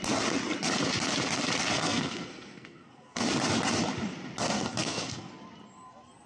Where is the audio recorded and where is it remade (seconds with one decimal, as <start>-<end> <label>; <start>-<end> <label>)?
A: 0.0-1.7 recorded; 1.7-3.2 remade; 3.2-4.8 recorded; 4.8-5.3 remade; 5.3-6.3 recorded